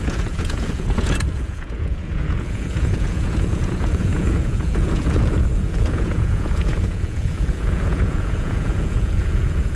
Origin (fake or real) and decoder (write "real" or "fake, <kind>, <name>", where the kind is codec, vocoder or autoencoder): fake, vocoder, Vocos